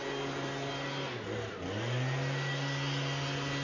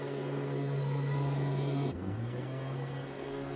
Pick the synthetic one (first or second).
second